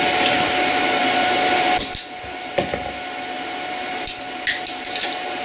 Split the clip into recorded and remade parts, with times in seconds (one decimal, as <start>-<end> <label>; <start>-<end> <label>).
0.0-5.4 recorded